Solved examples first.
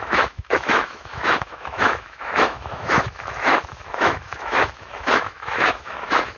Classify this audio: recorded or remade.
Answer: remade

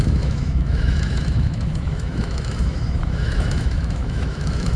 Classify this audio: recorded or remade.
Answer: remade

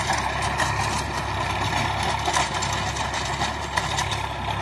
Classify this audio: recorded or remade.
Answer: recorded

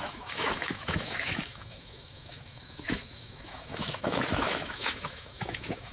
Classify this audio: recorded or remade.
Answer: remade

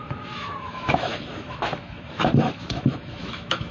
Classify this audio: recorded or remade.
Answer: remade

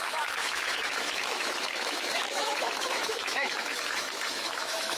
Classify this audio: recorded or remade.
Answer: remade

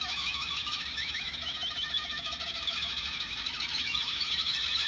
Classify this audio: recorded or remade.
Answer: remade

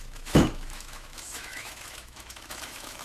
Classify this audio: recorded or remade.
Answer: remade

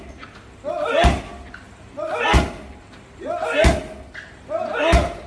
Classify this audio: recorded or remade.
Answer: recorded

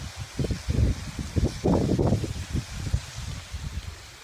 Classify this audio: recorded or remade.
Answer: recorded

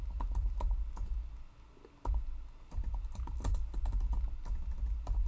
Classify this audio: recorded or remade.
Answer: recorded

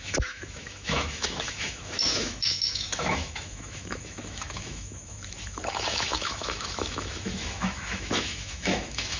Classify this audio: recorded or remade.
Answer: remade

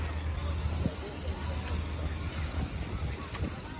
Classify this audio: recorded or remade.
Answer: recorded